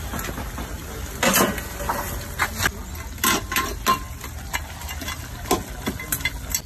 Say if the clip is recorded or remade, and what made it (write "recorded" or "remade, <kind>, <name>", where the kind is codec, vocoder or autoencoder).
recorded